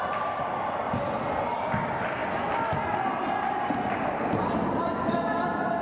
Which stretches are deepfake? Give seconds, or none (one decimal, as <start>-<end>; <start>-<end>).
none